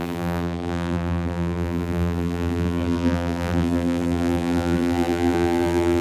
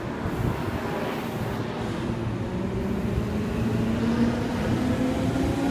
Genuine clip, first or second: second